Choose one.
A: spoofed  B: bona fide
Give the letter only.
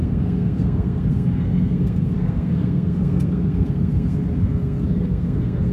A